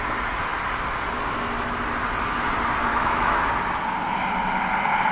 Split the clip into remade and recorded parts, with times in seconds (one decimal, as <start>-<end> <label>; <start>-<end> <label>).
0.0-2.9 recorded; 2.9-3.5 remade; 3.5-5.1 recorded